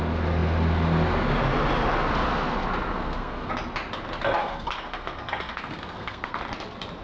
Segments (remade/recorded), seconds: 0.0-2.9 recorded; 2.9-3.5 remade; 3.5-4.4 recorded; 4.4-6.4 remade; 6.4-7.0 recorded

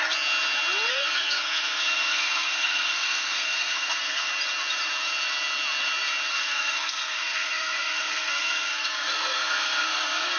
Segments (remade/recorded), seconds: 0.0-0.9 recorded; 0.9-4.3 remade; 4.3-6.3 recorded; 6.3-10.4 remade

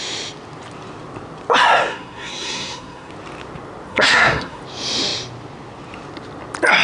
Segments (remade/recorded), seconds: 0.0-1.9 recorded; 1.9-3.1 remade; 3.1-3.9 recorded; 3.9-4.6 remade; 4.6-6.8 recorded